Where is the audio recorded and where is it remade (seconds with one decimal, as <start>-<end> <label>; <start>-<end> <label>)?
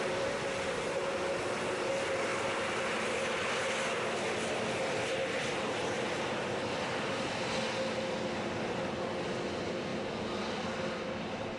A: 0.0-11.6 recorded